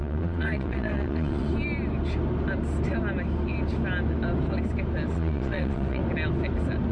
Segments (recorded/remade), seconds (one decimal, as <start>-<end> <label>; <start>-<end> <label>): 0.0-1.5 remade; 1.5-5.1 recorded; 5.1-6.0 remade; 6.0-6.9 recorded